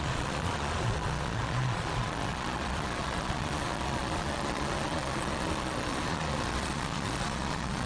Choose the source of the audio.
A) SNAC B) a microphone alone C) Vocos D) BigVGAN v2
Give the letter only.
C